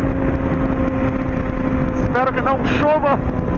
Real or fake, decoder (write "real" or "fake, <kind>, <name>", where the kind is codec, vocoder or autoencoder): real